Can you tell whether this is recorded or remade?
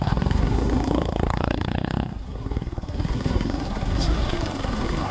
remade